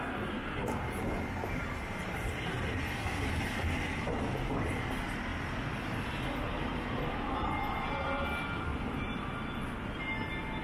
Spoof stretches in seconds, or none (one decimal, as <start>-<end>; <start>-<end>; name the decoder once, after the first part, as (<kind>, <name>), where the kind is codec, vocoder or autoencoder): 0.6-2.8 (vocoder, BigVGAN v2)